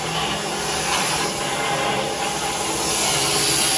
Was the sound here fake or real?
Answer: real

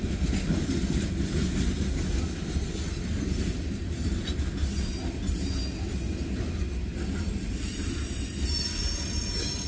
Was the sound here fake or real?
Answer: real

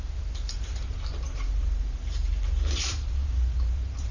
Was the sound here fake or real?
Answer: fake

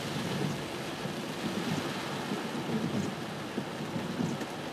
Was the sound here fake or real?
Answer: real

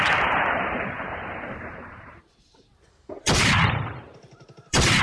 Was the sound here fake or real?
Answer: fake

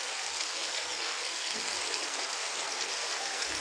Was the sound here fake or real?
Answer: fake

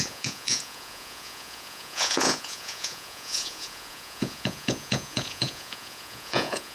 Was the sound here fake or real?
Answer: fake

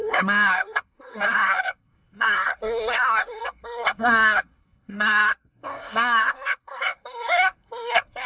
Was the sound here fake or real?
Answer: fake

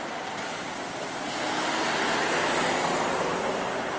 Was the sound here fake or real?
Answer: real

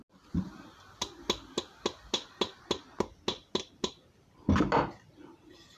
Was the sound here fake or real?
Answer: real